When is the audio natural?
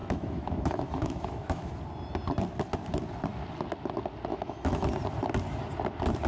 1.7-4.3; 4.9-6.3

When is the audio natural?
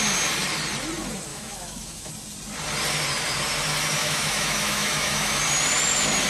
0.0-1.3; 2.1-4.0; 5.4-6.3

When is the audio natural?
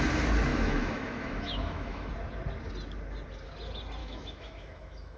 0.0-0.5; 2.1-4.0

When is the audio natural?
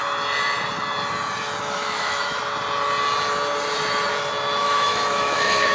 0.0-1.6; 2.4-4.6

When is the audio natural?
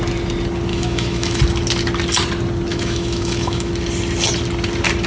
0.0-0.7; 1.4-2.7; 3.7-5.1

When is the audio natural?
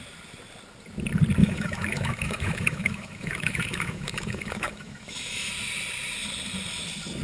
0.0-1.4; 5.5-7.2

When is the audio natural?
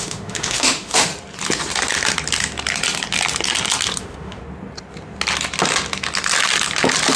1.1-4.0; 4.4-7.2